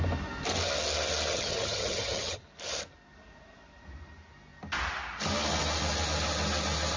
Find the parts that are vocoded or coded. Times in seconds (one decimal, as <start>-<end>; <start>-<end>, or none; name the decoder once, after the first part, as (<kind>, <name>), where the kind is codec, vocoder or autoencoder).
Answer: 1.3-2.4 (vocoder, HiFi-GAN)